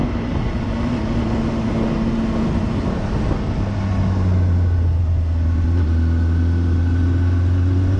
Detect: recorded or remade recorded